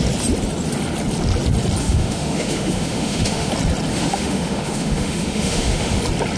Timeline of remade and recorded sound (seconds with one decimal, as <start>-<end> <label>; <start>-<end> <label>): 0.0-1.8 recorded; 1.8-3.5 remade; 3.5-3.9 recorded; 3.9-6.0 remade; 6.0-6.4 recorded